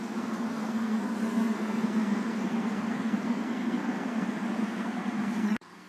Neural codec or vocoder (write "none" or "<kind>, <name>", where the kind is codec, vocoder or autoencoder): codec, SNAC